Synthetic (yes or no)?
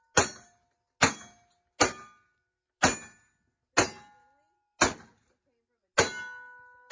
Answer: no